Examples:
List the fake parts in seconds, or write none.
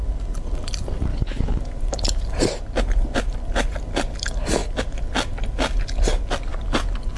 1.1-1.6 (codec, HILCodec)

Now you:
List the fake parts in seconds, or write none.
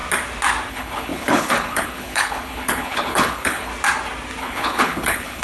0.7-3.7 (codec, HILCodec); 4.4-5.4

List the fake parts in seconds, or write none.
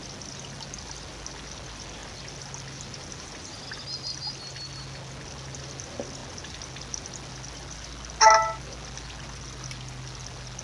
none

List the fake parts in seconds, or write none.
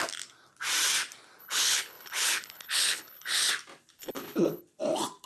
1.4-3.5 (codec, HILCodec); 4.0-4.6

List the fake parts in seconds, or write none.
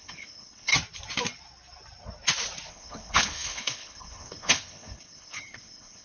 0.0-0.7 (codec, HILCodec); 2.7-6.0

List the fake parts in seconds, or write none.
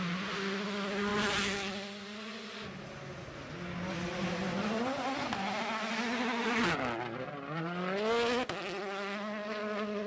none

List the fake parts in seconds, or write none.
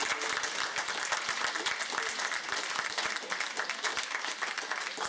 none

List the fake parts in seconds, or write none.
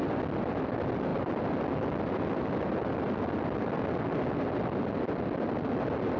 none